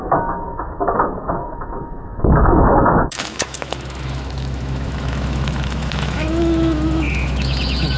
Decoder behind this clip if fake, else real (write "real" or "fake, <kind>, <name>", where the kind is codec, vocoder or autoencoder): fake, autoencoder, DAC-VAE